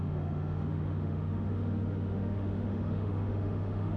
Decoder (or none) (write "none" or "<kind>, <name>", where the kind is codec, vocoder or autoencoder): autoencoder, DAC-VAE